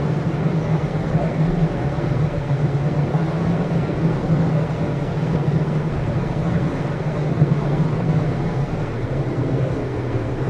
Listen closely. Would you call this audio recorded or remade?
remade